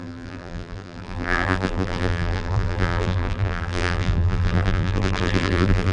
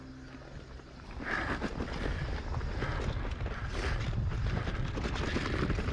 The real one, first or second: second